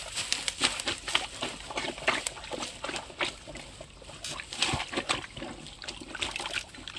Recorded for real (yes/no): yes